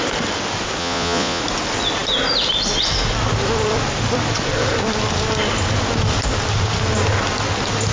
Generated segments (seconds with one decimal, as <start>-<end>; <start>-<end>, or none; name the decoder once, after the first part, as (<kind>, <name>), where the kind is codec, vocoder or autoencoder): 0.8-1.4 (vocoder, Vocos)